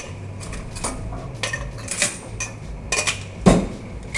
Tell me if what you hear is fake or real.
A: real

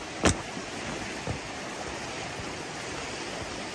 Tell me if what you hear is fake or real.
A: real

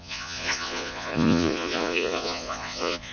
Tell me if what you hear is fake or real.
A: fake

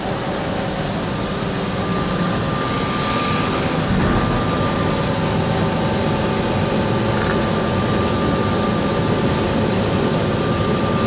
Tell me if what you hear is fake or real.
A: real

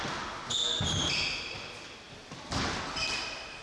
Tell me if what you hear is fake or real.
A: real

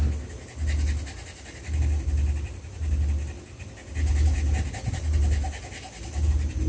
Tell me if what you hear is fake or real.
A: real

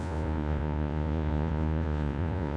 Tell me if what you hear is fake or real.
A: fake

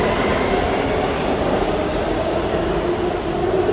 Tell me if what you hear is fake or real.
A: real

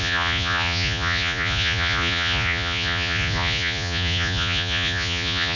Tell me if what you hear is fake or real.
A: fake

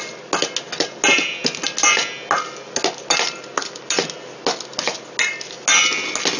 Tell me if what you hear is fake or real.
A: real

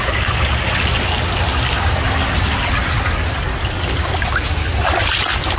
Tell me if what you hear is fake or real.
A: real